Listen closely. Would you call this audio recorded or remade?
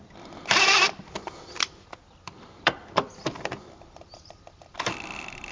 remade